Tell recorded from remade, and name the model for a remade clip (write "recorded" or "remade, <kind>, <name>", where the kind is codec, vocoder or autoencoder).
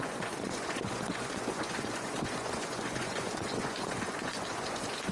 remade, vocoder, Vocos